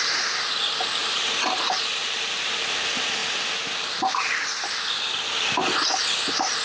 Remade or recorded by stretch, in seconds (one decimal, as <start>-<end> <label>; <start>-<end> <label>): 0.0-1.0 recorded; 1.0-2.0 remade; 2.0-6.6 recorded